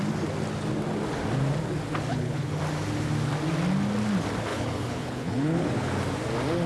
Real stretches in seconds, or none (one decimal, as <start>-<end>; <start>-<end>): 0.0-2.1; 2.6-4.5; 5.9-6.7